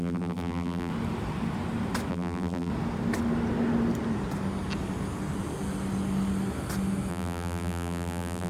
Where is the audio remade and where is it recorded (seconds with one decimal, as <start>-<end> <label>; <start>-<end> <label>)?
0.0-0.9 remade; 0.9-2.1 recorded; 2.1-2.7 remade; 2.7-7.1 recorded; 7.1-8.5 remade